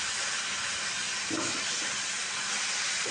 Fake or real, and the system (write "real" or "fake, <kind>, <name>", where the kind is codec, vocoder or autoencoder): real